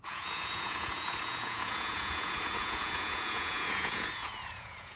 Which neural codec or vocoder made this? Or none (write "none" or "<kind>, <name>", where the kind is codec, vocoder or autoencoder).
vocoder, Vocos